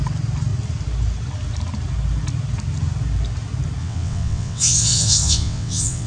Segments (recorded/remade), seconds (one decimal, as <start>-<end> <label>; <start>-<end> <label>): 0.0-3.8 recorded; 3.8-6.1 remade